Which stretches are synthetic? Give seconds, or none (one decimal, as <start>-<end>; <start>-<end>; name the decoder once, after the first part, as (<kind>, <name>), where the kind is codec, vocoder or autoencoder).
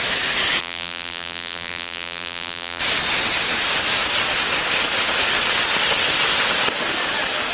0.6-2.8 (vocoder, BigVGAN v2)